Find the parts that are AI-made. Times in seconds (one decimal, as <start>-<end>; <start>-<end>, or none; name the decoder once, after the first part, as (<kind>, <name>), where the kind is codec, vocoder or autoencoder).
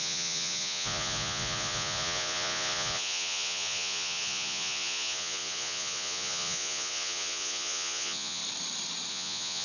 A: 0.0-8.4 (vocoder, Vocos); 9.1-9.6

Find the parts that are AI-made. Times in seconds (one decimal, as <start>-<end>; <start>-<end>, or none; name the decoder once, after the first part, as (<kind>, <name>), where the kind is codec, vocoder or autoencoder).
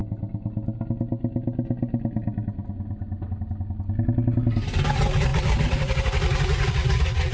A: none